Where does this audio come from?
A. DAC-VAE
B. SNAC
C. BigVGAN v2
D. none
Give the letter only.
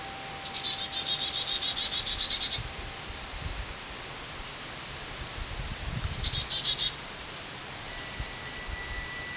D